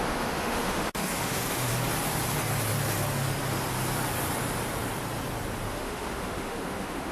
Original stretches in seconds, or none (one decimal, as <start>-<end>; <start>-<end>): 1.7-5.7